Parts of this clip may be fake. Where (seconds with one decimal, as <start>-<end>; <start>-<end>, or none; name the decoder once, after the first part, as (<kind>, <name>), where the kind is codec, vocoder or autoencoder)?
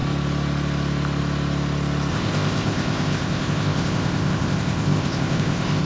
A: 2.1-5.8 (codec, ZipCodec)